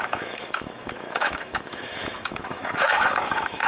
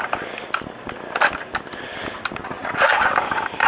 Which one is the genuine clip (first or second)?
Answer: second